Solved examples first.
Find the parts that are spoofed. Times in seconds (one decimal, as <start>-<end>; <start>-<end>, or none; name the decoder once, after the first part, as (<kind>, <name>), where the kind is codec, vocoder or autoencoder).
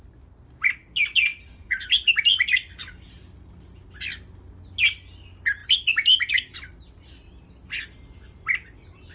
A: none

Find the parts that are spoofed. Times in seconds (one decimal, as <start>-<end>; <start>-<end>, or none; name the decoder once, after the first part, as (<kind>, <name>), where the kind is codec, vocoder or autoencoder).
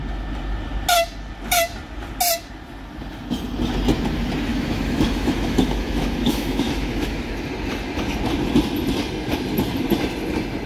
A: 4.5-7.3 (autoencoder, DAC-VAE)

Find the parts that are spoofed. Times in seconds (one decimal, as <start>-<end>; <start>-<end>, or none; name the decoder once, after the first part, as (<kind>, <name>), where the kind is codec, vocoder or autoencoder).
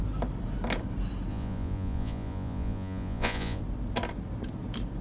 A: 1.3-3.6 (vocoder, Vocos)